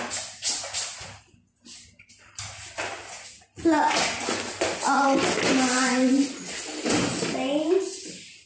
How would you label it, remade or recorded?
recorded